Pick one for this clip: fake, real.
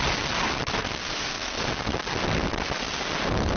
real